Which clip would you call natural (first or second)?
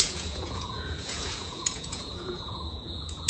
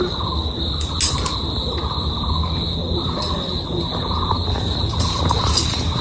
second